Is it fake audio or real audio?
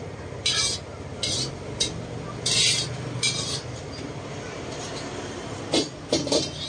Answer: real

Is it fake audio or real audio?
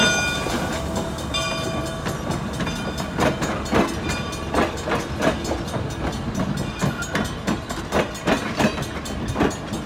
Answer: real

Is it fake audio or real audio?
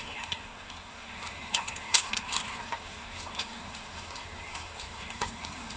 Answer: fake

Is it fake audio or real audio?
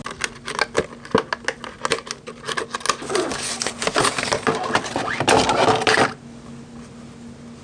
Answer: real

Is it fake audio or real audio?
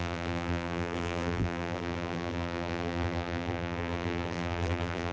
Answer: fake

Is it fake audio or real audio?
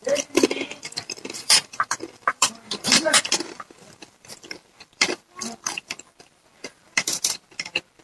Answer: fake